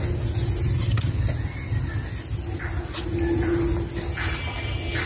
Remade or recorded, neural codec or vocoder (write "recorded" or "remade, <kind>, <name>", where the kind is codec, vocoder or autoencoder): recorded